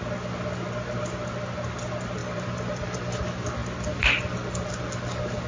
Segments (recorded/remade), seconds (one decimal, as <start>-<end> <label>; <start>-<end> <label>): 0.0-2.2 recorded; 2.2-3.2 remade; 3.2-5.5 recorded

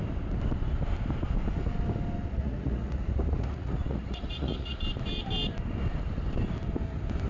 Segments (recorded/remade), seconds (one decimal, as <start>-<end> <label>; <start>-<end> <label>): 0.0-2.4 recorded; 2.4-4.8 remade; 4.8-7.3 recorded

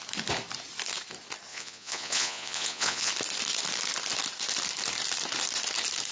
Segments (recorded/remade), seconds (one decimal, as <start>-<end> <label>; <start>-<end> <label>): 0.0-1.5 recorded; 1.5-3.1 remade; 3.1-6.1 recorded

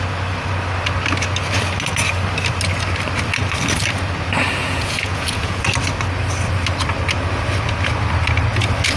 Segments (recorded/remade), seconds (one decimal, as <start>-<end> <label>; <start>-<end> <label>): 0.0-4.6 recorded; 4.6-5.6 remade; 5.6-9.0 recorded

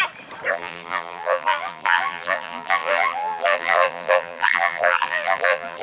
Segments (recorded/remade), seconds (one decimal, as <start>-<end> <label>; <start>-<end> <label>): 0.0-0.5 recorded; 0.5-5.8 remade

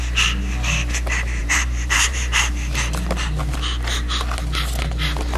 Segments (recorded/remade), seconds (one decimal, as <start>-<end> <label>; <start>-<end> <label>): 0.0-1.4 recorded; 1.4-2.5 remade; 2.5-5.4 recorded

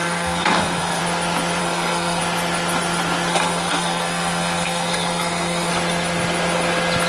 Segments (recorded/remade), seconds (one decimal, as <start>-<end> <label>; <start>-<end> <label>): 0.0-1.0 remade; 1.0-1.6 recorded; 1.6-2.2 remade; 2.2-3.3 recorded; 3.3-5.7 remade; 5.7-7.1 recorded